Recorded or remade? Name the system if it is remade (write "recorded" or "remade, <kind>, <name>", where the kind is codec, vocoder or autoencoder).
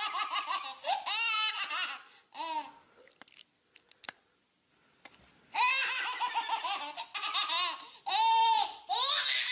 recorded